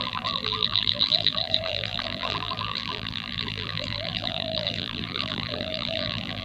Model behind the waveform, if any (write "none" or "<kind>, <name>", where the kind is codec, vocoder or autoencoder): vocoder, BigVGAN v2